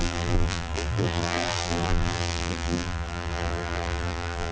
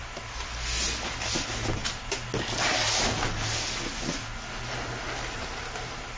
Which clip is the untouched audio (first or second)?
second